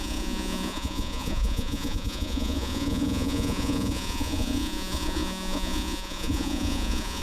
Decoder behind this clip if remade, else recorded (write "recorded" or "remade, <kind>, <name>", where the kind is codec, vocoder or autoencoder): remade, vocoder, Vocos